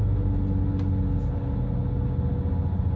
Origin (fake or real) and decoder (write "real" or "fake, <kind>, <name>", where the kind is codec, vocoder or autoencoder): real